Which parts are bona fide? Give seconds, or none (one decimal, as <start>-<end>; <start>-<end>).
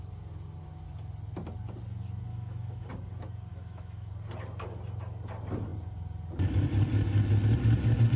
0.0-2.3; 2.9-3.5; 4.1-8.2